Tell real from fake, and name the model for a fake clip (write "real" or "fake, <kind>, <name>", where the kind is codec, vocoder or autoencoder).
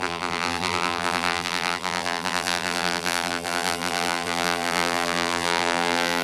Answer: fake, vocoder, BigVGAN v2